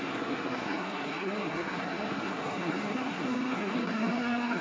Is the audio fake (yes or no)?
yes